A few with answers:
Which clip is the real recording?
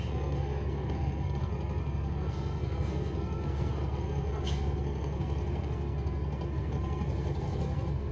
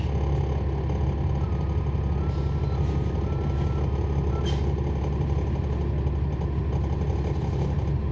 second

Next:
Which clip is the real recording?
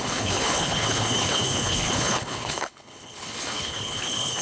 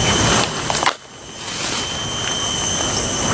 second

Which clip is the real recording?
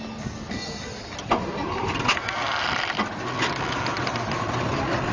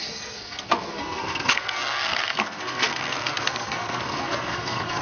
first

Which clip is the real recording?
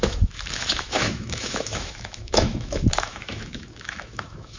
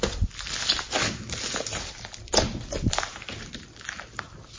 second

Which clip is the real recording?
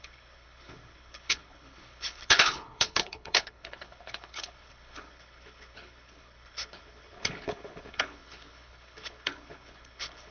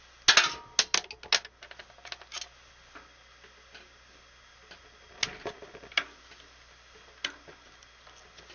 second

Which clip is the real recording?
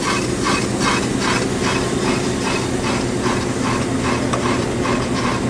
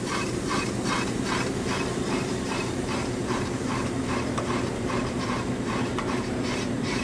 first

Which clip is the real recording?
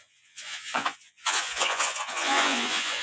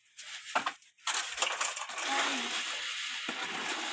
second